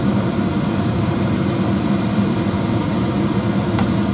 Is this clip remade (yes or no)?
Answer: no